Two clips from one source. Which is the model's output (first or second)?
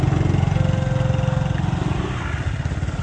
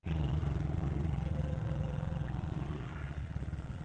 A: second